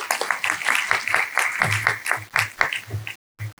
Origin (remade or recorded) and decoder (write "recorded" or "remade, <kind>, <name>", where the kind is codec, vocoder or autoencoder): recorded